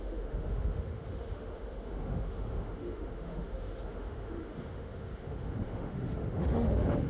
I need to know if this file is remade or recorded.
remade